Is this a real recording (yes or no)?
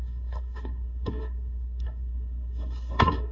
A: no